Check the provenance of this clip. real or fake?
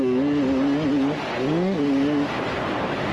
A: real